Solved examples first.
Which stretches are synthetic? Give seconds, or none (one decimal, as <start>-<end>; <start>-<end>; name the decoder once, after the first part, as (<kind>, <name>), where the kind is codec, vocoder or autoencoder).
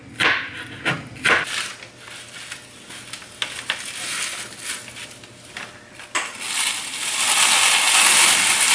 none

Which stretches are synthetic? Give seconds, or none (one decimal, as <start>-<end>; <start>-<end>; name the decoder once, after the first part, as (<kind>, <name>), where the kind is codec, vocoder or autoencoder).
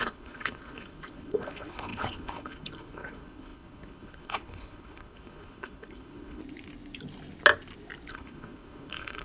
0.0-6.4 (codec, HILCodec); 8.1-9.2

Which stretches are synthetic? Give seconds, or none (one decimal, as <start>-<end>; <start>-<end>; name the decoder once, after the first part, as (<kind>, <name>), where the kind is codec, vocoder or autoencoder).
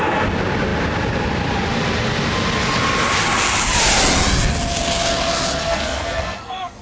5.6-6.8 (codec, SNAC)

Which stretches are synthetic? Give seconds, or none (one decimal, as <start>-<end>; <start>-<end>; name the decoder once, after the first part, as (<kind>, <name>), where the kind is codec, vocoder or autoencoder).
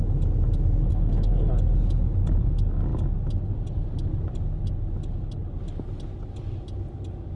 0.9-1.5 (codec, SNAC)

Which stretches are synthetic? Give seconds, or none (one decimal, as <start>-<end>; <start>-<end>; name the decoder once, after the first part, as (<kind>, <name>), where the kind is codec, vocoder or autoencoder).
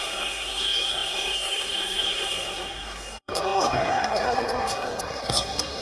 0.0-5.8 (codec, SNAC)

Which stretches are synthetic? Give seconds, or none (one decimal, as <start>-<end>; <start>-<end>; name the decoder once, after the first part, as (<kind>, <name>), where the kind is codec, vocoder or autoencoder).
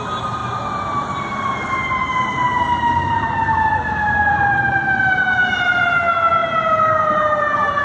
2.0-5.8 (vocoder, BigVGAN v2); 6.4-7.8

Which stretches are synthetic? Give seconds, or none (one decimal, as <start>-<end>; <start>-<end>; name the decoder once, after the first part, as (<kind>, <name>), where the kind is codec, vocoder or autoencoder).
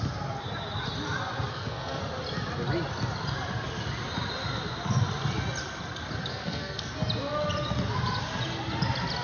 1.5-2.0 (codec, SNAC); 6.3-6.9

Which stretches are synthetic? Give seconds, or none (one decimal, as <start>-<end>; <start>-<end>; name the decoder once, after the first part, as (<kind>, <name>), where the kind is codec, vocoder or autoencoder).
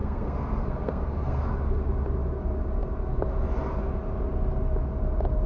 0.0-1.4 (codec, SNAC)